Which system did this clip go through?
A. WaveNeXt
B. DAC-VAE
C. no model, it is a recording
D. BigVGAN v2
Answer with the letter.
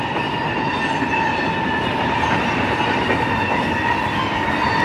C